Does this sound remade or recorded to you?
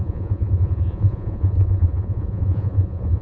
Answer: remade